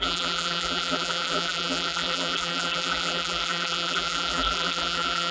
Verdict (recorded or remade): remade